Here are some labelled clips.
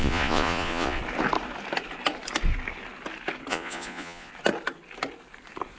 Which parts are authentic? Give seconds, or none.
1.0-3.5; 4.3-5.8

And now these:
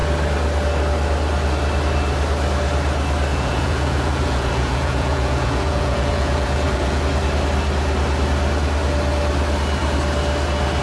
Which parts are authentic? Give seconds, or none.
0.0-3.3; 7.0-10.8